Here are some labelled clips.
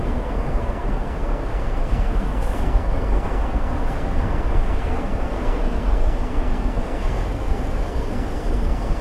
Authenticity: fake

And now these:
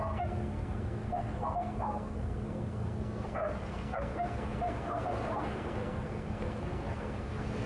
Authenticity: fake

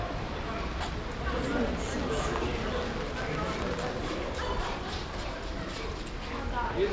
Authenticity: real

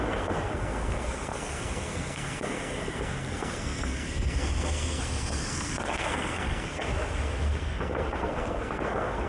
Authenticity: fake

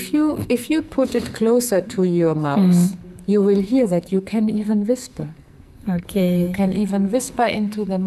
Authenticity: fake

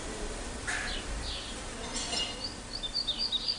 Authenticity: real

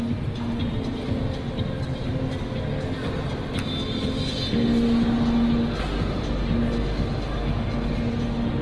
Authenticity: real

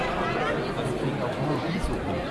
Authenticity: real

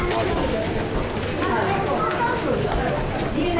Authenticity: real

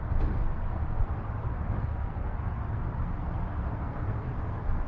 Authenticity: fake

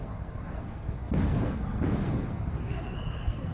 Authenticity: fake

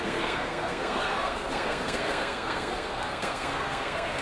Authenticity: fake